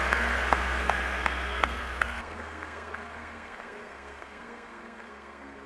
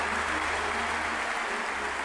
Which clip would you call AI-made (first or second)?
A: first